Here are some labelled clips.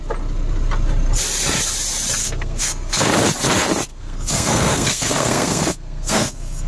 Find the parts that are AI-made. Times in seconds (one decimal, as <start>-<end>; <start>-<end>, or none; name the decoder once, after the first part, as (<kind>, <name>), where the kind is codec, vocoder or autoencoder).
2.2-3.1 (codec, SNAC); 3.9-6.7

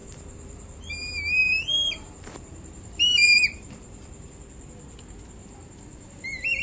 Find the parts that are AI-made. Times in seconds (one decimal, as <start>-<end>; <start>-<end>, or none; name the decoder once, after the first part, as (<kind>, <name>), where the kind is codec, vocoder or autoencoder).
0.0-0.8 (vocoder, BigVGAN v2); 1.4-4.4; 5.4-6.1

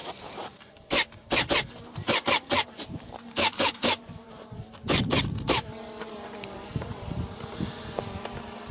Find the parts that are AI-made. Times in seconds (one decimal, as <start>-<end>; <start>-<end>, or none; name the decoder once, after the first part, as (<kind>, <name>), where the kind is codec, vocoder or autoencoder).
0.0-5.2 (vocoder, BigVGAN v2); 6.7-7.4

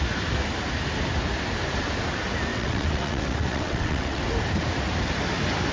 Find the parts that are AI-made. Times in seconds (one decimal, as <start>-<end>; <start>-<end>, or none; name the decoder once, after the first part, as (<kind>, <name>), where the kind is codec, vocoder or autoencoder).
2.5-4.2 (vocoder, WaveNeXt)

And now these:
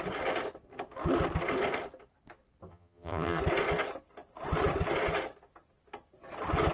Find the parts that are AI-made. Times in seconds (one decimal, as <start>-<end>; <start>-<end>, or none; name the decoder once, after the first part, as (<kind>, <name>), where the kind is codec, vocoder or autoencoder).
2.7-3.4 (vocoder, HiFi-GAN)

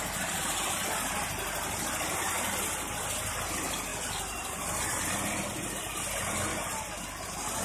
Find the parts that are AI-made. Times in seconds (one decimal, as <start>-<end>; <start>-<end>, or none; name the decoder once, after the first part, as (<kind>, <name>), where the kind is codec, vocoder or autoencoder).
none